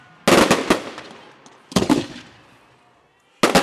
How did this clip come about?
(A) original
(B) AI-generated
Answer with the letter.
A